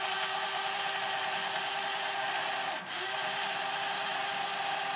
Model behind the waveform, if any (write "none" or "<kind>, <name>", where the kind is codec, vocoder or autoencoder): none